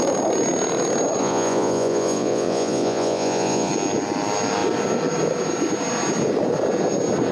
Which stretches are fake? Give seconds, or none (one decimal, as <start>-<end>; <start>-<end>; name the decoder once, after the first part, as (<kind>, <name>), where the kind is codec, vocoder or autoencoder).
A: 1.2-3.7 (vocoder, Vocos)